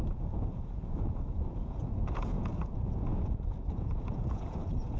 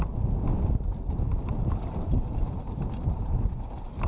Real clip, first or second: second